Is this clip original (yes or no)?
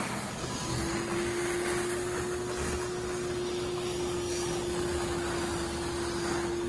yes